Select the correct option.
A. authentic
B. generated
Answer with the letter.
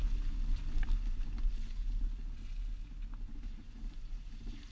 A